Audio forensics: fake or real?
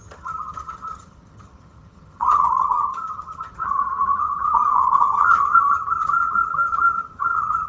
fake